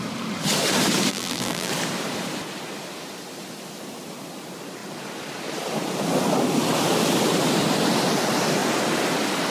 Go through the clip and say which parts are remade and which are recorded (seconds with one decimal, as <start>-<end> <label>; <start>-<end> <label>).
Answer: 0.0-1.1 recorded; 1.1-1.7 remade; 1.7-9.5 recorded